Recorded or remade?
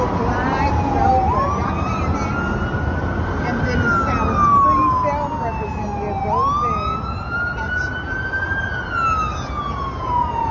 recorded